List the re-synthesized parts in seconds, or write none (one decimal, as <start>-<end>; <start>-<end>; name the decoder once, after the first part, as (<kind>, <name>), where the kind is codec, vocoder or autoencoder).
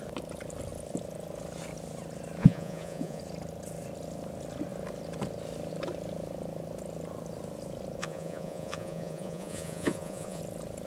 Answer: 2.4-3.2 (vocoder, Vocos); 8.0-10.4